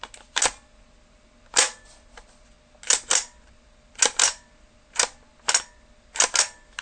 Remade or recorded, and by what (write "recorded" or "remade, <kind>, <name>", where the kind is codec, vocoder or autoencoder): recorded